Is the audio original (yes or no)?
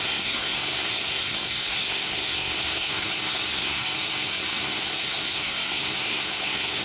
no